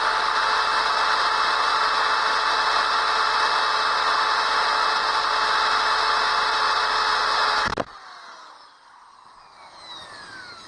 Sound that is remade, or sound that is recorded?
recorded